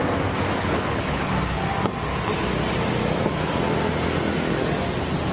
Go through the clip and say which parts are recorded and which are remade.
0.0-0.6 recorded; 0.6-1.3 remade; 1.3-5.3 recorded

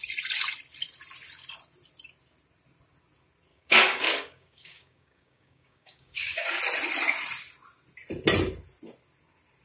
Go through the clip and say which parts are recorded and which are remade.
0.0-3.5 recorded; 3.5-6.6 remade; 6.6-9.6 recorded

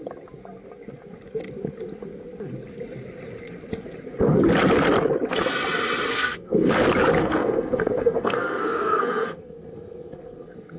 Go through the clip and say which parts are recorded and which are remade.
0.0-6.1 recorded; 6.1-6.7 remade; 6.7-7.2 recorded; 7.2-10.8 remade

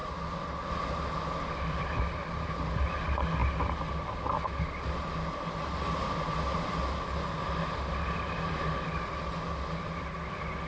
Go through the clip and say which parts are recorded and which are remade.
0.0-2.0 remade; 2.0-10.7 recorded

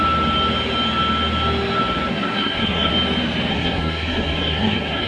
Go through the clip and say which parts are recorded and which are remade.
0.0-2.1 recorded; 2.1-2.9 remade; 2.9-3.5 recorded; 3.5-5.1 remade